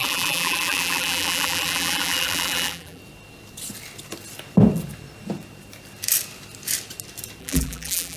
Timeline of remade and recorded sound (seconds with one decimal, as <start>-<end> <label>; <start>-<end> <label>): 0.0-3.0 remade; 3.0-7.4 recorded; 7.4-8.2 remade